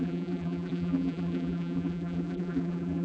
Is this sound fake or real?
fake